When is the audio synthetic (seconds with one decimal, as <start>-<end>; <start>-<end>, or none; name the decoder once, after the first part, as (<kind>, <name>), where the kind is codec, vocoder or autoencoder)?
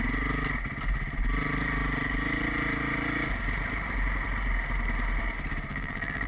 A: 5.7-6.3 (vocoder, BigVGAN v2)